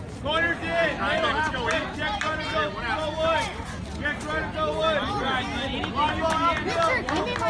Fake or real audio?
real